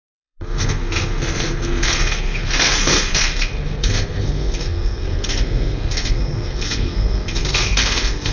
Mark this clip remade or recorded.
remade